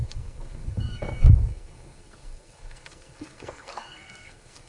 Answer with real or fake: fake